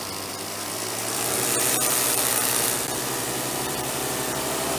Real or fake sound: fake